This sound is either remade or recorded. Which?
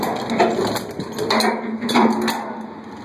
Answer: recorded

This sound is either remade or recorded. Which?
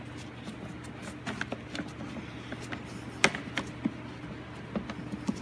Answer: recorded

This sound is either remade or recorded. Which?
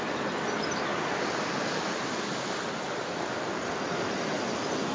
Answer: recorded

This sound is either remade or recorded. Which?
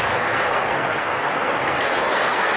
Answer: remade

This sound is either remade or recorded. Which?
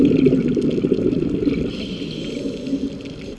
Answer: recorded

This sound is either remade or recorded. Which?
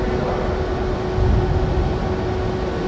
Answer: recorded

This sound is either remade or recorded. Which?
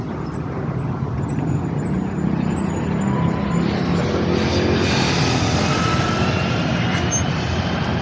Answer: recorded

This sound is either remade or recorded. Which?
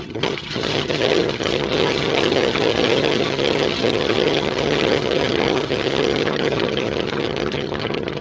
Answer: remade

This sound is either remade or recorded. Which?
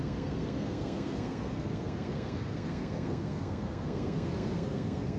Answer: remade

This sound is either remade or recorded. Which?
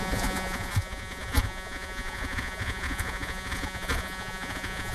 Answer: remade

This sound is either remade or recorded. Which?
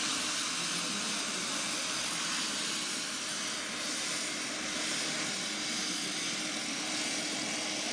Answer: recorded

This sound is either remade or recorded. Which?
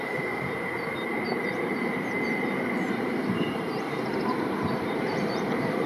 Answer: remade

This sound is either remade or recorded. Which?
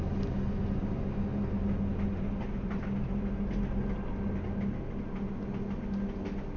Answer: recorded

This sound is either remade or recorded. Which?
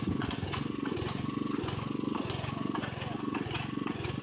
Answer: remade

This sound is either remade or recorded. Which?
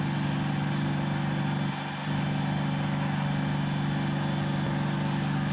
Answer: recorded